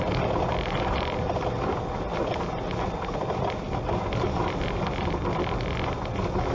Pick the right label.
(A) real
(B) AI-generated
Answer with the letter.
A